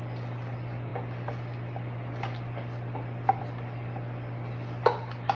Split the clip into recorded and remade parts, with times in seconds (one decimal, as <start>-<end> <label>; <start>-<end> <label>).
0.0-5.3 recorded